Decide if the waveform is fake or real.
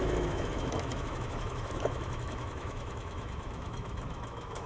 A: fake